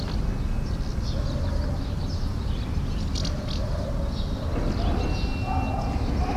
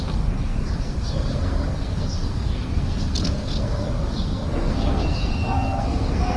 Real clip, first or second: first